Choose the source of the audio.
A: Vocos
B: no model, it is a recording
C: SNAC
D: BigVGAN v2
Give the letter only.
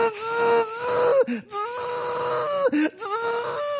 B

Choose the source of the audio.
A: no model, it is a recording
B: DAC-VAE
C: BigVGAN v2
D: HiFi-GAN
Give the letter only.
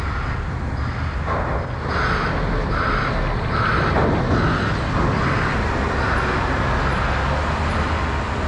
A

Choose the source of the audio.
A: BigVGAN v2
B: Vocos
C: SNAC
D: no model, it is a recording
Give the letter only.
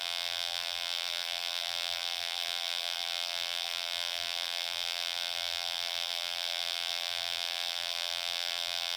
A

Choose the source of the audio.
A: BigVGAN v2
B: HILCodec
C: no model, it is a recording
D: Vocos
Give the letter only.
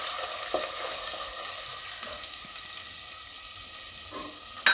C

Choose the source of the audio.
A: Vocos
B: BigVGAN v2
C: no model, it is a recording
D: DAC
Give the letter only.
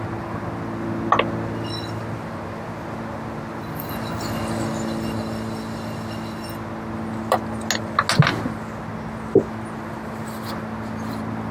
C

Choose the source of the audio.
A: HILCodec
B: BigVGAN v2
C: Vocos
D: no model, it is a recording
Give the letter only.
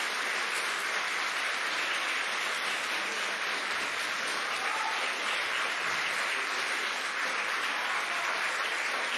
B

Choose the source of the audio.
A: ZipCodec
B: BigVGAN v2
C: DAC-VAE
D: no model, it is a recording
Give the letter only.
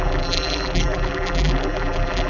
B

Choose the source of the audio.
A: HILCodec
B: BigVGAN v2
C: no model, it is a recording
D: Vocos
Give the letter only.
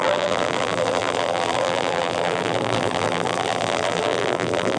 B